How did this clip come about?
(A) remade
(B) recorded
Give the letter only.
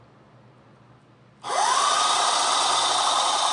B